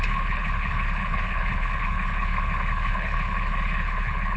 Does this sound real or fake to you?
fake